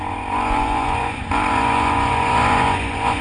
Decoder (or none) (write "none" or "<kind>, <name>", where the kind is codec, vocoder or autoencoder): vocoder, Vocos